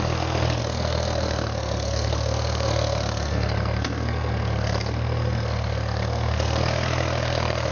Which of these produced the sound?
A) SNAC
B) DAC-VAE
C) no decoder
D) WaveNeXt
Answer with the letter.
A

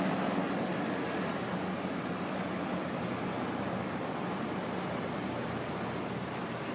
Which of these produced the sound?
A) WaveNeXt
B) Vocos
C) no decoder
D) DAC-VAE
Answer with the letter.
C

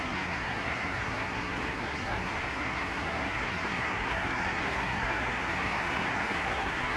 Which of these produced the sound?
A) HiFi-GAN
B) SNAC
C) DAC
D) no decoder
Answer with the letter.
B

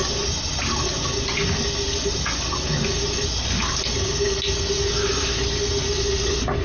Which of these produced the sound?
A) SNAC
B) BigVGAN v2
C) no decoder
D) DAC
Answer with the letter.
C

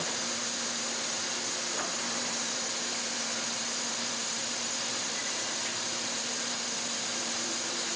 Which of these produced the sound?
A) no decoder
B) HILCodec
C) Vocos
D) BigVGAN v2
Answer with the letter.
D